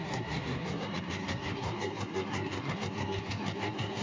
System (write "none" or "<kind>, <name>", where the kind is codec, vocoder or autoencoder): codec, SNAC